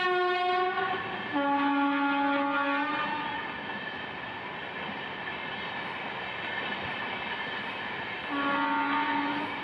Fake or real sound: real